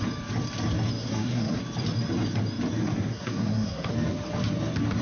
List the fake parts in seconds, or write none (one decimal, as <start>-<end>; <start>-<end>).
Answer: 1.0-1.6; 2.8-3.9